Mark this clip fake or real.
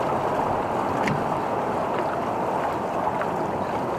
real